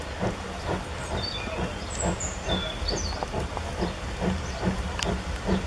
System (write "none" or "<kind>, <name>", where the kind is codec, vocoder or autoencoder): none